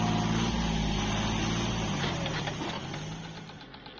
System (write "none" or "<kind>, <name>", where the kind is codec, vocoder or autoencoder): none